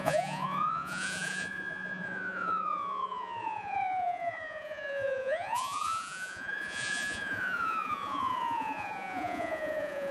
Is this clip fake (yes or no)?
yes